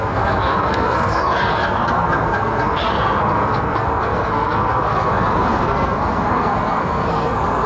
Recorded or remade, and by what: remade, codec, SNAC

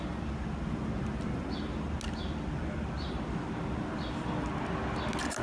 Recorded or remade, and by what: recorded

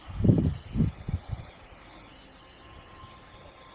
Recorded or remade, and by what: recorded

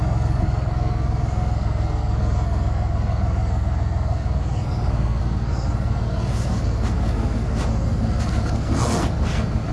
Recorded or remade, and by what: remade, codec, SNAC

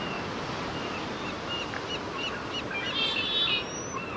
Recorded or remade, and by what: recorded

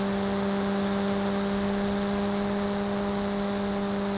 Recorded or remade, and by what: recorded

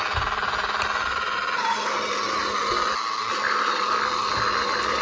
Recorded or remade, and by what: recorded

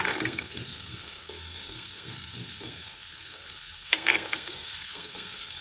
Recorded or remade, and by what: remade, codec, SNAC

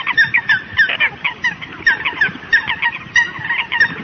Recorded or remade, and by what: recorded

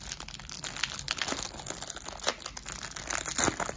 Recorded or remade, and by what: recorded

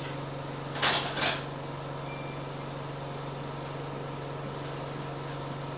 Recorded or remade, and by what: recorded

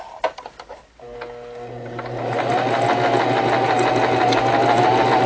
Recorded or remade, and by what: recorded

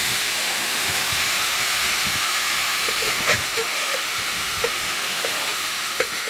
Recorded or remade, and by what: remade, autoencoder, DAC-VAE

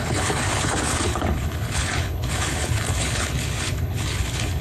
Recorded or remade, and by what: remade, codec, HILCodec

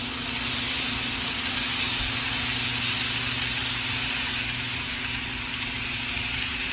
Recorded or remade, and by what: recorded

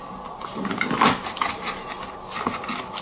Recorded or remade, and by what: recorded